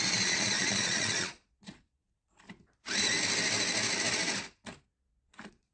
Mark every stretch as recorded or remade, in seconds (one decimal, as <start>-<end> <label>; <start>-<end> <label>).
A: 0.0-2.0 remade; 2.0-4.8 recorded; 4.8-5.7 remade

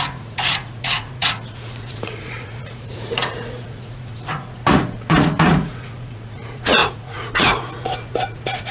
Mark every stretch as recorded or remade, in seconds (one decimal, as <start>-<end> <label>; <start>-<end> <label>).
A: 0.0-8.7 remade